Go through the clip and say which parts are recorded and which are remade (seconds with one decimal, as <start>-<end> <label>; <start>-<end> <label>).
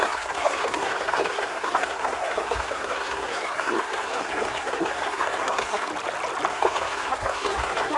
0.0-5.9 remade; 5.9-6.5 recorded; 6.5-8.0 remade